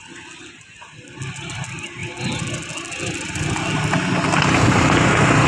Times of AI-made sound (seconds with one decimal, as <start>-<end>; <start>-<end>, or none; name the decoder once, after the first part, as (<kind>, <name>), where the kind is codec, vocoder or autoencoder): none